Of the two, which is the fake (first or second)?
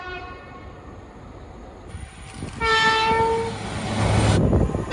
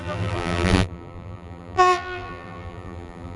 second